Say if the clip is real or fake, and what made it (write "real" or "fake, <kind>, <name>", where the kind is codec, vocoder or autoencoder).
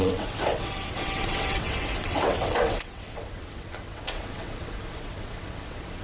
fake, vocoder, WaveNeXt